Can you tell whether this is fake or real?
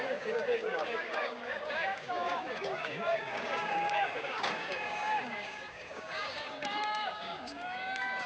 fake